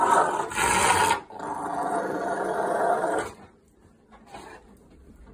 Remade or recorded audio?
recorded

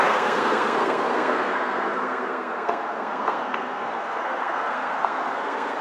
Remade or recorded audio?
remade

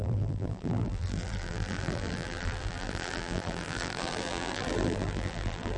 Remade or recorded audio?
remade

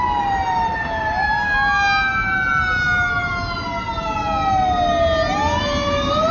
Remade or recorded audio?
recorded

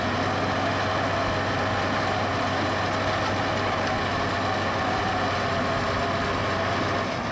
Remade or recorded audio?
recorded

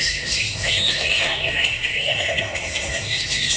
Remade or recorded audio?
remade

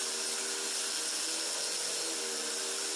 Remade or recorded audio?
recorded